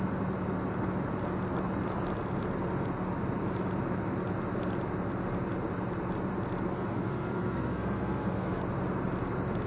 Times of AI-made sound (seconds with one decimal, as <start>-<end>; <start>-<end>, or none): 6.7-8.6